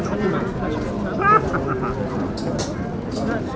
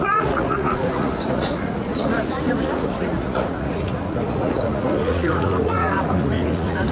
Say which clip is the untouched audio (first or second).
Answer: first